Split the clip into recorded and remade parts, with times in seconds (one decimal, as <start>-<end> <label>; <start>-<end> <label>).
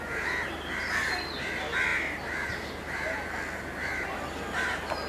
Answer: 0.0-5.1 recorded